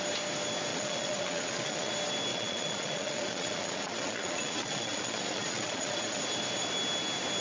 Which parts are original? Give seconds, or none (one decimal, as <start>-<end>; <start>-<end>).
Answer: 0.0-0.7; 1.9-2.3; 6.2-7.4